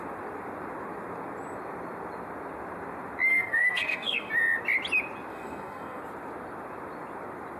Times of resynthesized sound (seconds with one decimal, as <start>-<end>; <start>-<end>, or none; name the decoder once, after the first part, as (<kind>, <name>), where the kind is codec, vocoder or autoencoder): 3.3-4.3 (codec, SNAC); 5.3-6.0